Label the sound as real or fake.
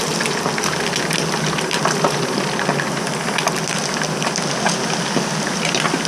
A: real